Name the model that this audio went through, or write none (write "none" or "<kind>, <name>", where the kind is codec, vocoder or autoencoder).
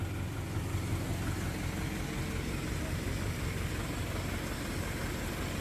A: none